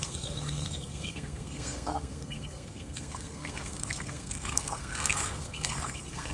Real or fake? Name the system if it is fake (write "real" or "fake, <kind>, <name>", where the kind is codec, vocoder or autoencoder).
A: fake, codec, SNAC